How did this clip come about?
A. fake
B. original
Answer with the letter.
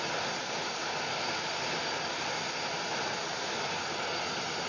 B